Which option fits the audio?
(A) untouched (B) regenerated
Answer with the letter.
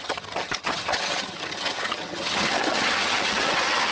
B